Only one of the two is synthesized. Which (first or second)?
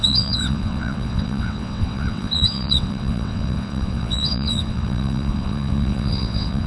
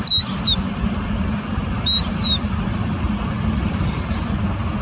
first